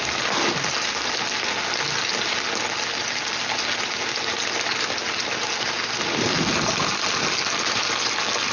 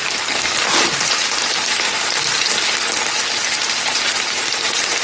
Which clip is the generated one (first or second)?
second